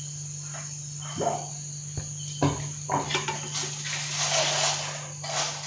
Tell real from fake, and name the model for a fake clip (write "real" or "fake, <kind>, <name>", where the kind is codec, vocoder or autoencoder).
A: real